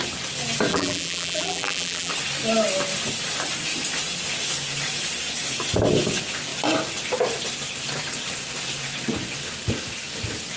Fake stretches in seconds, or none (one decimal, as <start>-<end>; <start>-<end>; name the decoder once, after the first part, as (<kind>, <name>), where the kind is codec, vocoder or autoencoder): 0.7-2.1 (vocoder, BigVGAN v2)